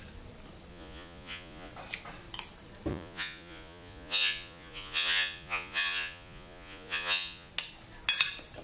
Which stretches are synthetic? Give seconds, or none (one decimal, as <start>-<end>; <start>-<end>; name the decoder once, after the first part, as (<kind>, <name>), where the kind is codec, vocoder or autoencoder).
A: 0.7-1.7 (vocoder, Vocos); 2.9-7.5